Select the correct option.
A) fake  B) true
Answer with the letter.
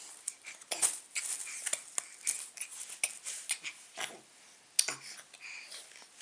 B